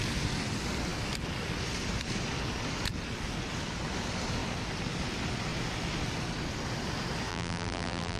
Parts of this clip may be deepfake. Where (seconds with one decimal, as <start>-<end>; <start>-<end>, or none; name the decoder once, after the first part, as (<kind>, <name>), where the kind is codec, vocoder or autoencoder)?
7.3-8.2 (vocoder, BigVGAN v2)

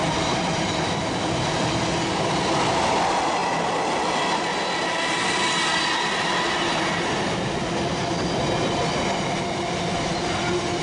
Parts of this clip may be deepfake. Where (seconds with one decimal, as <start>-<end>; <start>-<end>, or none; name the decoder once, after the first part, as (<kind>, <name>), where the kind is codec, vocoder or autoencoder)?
0.0-1.9 (vocoder, BigVGAN v2)